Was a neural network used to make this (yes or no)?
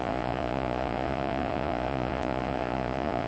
yes